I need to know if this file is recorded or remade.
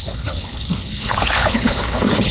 remade